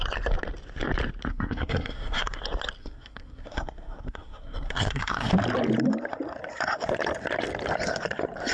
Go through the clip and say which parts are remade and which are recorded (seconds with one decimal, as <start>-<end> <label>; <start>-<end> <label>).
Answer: 0.0-1.3 recorded; 1.3-2.4 remade; 2.4-2.8 recorded; 2.8-5.3 remade; 5.3-8.5 recorded